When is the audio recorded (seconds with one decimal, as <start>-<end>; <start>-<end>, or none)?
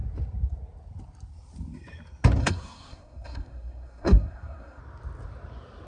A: 0.0-2.4; 4.8-5.9